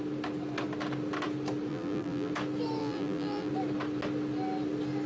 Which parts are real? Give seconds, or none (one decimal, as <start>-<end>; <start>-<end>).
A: 0.0-1.7; 2.3-2.8; 3.5-5.1